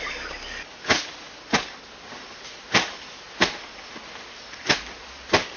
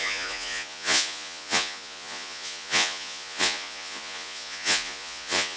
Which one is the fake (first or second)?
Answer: second